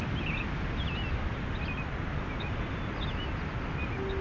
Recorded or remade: recorded